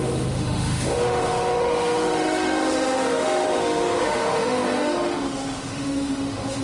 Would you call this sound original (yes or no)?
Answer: no